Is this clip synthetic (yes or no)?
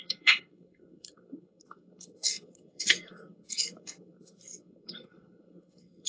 yes